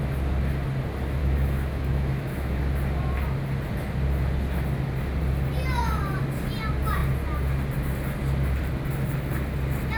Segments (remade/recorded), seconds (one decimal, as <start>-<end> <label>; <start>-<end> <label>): 0.0-1.2 recorded; 1.2-2.6 remade; 2.6-10.0 recorded